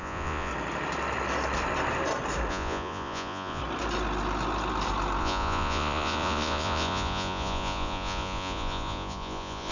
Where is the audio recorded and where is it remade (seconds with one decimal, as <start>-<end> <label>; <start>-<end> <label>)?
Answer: 0.0-0.5 remade; 0.5-2.5 recorded; 2.5-3.6 remade; 3.6-5.2 recorded; 5.2-9.7 remade